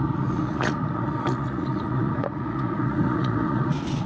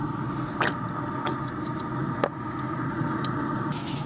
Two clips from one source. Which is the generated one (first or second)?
first